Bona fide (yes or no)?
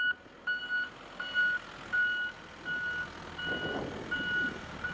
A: yes